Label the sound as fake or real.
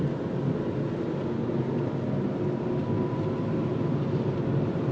real